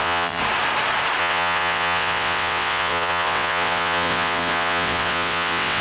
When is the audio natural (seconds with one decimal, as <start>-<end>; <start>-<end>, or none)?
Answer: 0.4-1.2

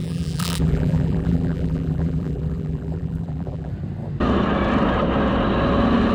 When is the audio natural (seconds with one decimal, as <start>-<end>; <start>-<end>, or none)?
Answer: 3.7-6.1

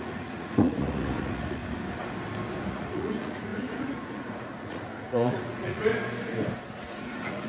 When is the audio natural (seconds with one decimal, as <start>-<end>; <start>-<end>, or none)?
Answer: 1.6-2.7; 5.9-6.8

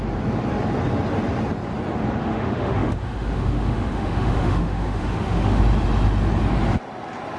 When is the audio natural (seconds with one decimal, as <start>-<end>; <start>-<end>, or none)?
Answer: 0.0-2.2; 5.6-7.4